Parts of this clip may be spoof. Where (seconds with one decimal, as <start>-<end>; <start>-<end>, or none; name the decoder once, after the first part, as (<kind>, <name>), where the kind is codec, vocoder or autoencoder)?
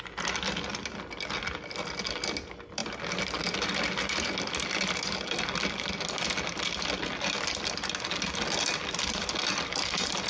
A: none